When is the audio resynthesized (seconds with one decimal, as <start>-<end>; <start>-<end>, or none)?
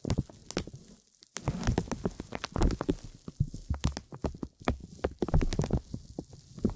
none